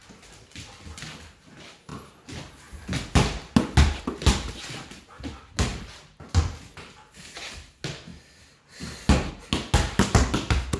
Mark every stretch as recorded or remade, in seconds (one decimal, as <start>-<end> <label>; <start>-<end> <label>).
0.0-10.8 recorded